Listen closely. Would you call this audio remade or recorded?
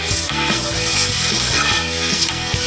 remade